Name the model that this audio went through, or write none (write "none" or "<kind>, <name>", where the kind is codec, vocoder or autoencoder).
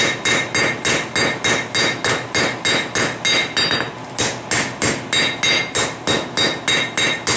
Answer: none